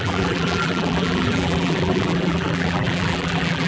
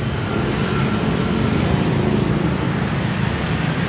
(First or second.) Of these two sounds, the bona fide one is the second